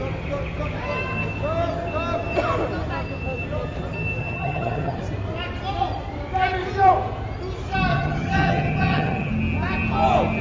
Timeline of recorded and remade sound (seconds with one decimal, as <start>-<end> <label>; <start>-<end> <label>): 0.0-4.2 recorded; 4.2-5.0 remade; 5.0-7.9 recorded; 7.9-9.3 remade; 9.3-10.4 recorded